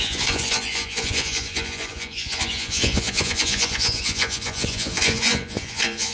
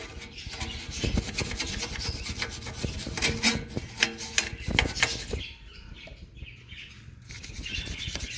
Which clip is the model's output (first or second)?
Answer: first